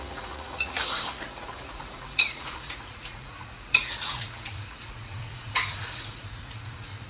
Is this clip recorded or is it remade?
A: remade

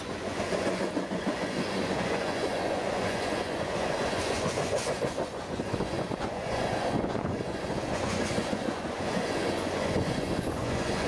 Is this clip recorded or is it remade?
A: remade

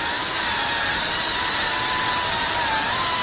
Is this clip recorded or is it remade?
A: recorded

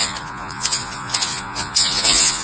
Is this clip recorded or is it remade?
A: remade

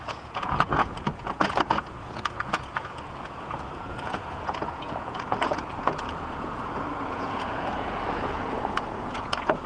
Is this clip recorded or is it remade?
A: remade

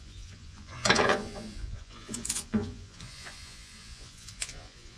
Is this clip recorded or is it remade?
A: remade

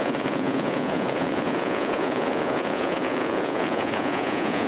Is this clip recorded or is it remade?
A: remade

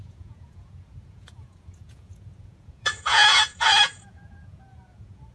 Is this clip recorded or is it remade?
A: remade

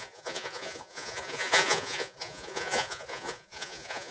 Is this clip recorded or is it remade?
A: remade